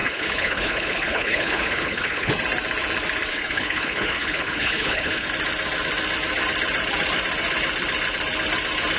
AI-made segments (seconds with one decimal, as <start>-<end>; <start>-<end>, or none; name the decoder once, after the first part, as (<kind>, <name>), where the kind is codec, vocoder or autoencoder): 0.0-2.3 (codec, HILCodec); 3.3-5.3